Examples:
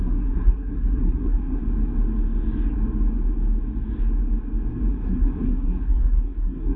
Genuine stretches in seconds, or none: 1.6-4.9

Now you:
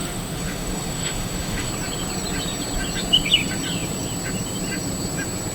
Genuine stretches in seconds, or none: 1.7-5.5

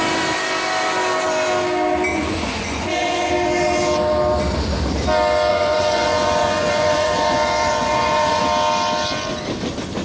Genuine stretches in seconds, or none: 0.0-2.1; 3.3-5.5; 8.4-10.0

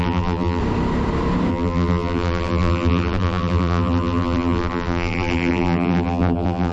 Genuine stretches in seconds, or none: 0.6-1.5

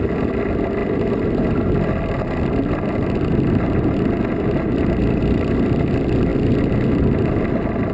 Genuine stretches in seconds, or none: 0.0-7.9

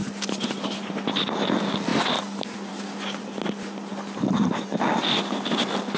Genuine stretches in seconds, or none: 0.0-6.0

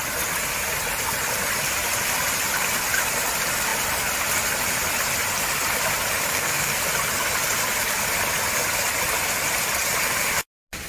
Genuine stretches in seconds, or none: 0.0-6.3; 6.8-10.9